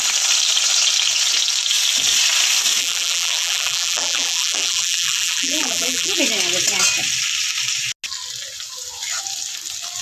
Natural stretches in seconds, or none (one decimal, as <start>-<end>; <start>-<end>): 0.0-2.8; 6.2-10.0